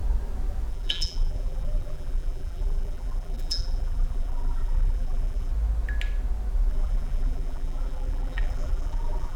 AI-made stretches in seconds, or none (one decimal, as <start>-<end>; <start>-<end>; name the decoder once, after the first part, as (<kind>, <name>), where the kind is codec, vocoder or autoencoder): 0.7-5.5 (vocoder, BigVGAN v2); 6.7-9.4